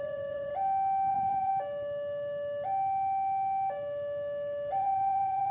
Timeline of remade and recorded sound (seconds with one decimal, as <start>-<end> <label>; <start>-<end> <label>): 0.0-0.5 remade; 0.5-1.1 recorded; 1.1-1.5 remade; 1.5-4.7 recorded; 4.7-5.5 remade